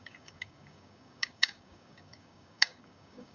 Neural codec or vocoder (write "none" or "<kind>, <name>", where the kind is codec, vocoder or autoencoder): codec, DAC